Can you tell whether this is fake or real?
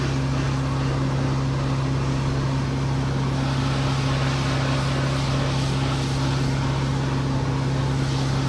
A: real